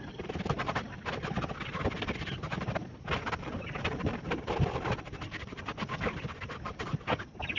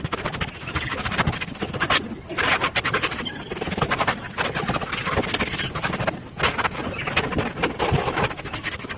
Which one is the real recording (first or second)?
second